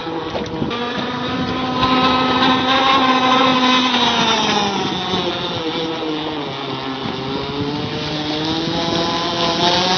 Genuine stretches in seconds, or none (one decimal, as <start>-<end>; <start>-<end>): 0.0-10.0